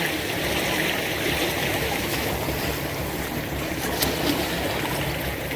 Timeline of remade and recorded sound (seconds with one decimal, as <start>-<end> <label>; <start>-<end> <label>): 0.0-1.6 recorded; 1.6-2.3 remade; 2.3-5.6 recorded